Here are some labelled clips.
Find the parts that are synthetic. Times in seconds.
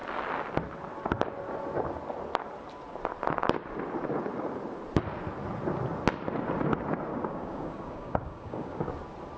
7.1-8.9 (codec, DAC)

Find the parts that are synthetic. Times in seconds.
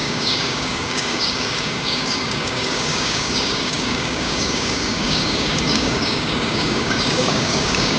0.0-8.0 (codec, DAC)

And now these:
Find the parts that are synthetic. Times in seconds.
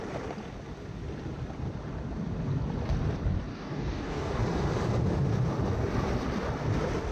3.5-4.4 (codec, DAC)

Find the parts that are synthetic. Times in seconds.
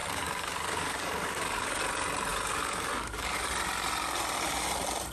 0.0-1.8 (codec, DAC); 2.3-3.5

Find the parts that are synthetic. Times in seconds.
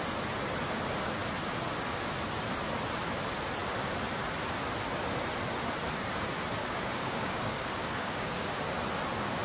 6.6-8.5 (codec, DAC)